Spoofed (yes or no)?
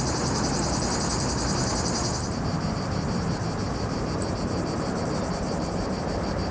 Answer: yes